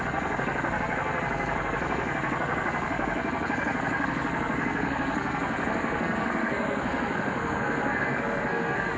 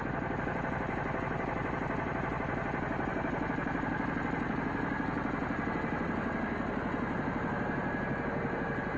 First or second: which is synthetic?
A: first